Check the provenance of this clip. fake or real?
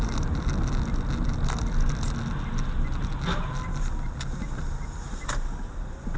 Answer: real